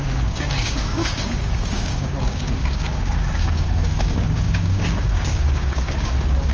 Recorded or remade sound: remade